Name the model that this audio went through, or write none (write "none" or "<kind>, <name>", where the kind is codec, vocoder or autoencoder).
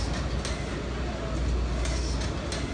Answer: none